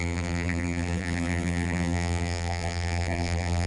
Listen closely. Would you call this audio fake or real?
fake